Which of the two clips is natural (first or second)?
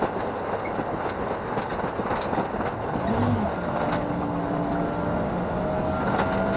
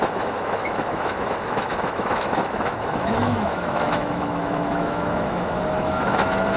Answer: first